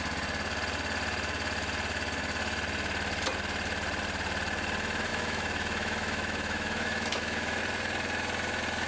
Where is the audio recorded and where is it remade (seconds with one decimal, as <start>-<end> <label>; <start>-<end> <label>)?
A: 0.0-5.1 recorded; 5.1-7.6 remade; 7.6-8.9 recorded